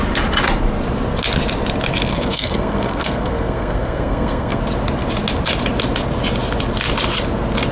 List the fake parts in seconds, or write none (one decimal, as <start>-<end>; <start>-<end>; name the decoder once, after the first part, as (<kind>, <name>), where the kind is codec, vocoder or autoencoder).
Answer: 2.1-4.6 (codec, SNAC)